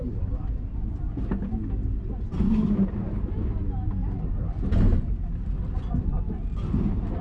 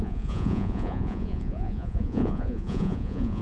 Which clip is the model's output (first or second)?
second